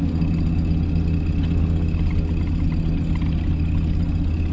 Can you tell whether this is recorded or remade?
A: recorded